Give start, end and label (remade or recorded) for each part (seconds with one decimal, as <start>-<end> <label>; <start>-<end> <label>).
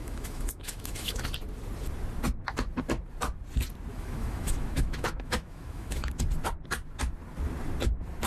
0.0-1.2 remade; 1.2-3.9 recorded; 3.9-6.1 remade; 6.1-8.3 recorded